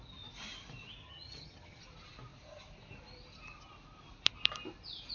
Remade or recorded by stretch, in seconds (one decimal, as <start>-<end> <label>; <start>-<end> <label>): 0.0-1.0 recorded; 1.0-1.8 remade; 1.8-5.1 recorded